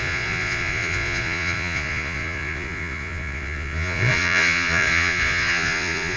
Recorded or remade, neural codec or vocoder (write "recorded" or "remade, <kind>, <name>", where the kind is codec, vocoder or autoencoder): remade, vocoder, Vocos